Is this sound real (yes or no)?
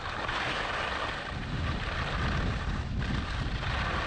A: no